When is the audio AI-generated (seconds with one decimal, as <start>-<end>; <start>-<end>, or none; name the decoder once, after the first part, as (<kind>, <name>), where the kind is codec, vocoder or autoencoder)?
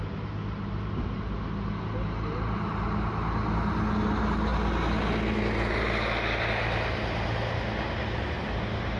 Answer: none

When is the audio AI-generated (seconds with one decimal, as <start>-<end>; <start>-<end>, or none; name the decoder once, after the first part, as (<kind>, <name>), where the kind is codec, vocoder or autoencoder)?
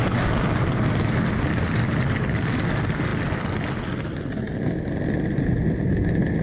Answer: none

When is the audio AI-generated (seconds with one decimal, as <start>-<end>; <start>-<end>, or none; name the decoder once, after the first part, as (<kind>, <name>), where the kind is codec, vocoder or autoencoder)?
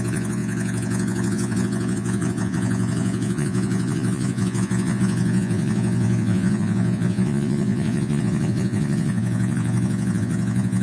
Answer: 0.0-10.8 (vocoder, Vocos)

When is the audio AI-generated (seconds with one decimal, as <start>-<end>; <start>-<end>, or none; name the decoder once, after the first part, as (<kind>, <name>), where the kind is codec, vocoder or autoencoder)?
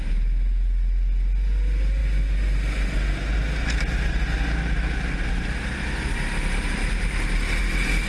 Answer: none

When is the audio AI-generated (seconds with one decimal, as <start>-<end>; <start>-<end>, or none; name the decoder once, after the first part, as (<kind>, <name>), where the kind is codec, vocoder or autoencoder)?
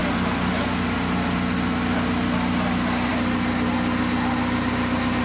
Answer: none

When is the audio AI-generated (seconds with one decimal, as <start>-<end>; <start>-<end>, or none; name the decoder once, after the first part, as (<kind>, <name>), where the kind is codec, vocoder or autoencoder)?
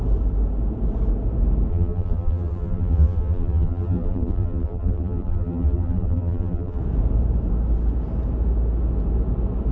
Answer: 1.7-6.8 (vocoder, BigVGAN v2)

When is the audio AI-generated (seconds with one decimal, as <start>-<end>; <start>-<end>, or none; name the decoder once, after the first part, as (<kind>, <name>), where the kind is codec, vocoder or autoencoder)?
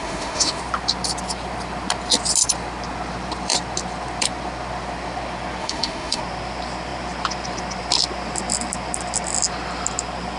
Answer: 0.0-0.6 (autoencoder, DAC-VAE); 5.6-6.2